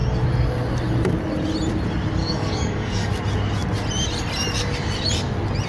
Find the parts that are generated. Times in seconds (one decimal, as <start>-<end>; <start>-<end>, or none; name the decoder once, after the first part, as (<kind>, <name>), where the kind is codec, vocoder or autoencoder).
2.2-3.1 (codec, DAC)